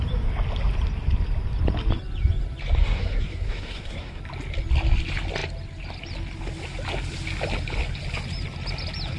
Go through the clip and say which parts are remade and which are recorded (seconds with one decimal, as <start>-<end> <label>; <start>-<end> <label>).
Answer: 0.0-2.8 recorded; 2.8-4.2 remade; 4.2-9.2 recorded